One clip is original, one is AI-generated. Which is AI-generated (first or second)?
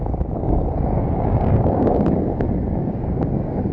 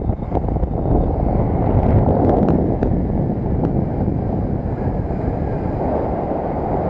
first